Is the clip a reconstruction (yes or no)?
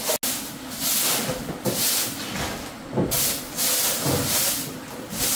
no